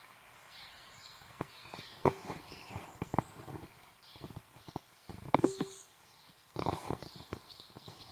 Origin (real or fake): fake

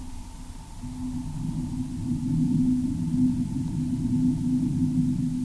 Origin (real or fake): real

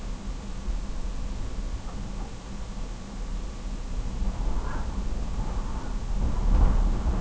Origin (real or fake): real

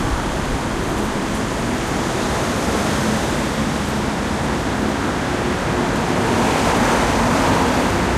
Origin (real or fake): real